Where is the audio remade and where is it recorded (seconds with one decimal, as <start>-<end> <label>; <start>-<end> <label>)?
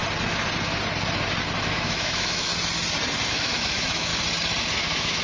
0.0-1.6 recorded; 1.6-2.5 remade; 2.5-3.3 recorded; 3.3-4.1 remade; 4.1-4.8 recorded; 4.8-5.2 remade